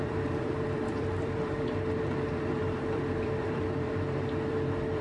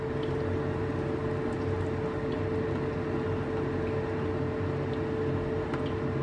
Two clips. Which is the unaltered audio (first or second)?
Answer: second